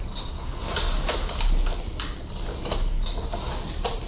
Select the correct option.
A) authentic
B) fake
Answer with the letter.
A